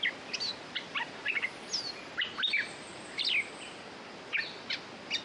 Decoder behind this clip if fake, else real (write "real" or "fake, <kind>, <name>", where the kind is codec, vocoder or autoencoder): real